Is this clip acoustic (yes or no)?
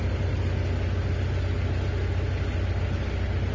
yes